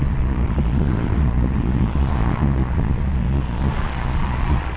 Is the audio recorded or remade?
remade